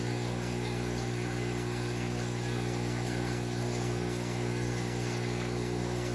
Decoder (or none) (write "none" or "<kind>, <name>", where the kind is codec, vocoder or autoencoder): codec, SNAC